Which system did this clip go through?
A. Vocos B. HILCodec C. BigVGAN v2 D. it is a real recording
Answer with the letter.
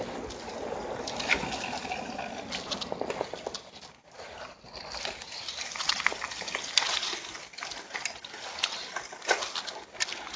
D